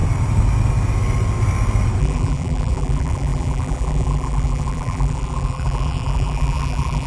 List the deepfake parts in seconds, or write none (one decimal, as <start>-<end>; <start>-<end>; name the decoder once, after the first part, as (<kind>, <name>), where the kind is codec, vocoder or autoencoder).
2.0-7.1 (vocoder, BigVGAN v2)